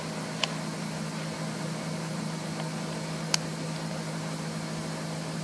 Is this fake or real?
real